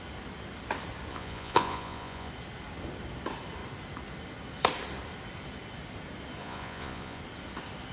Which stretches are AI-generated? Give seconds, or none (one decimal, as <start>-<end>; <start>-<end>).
1.1-2.3; 6.4-7.2